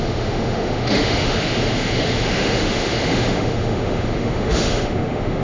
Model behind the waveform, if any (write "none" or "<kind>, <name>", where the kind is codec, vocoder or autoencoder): autoencoder, DAC-VAE